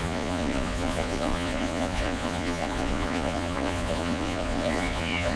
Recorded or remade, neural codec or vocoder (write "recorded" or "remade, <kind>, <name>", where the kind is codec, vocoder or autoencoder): remade, vocoder, Vocos